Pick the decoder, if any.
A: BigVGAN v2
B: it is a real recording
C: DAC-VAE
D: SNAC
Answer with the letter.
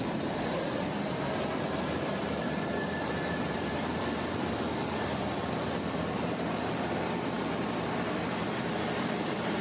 A